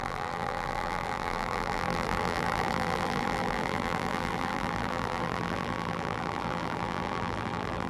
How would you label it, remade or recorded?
remade